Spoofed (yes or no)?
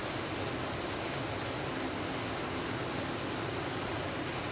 no